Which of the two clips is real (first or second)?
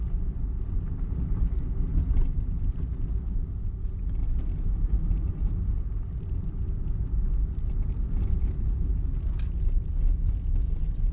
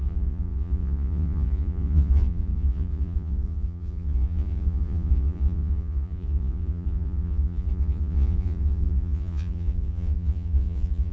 first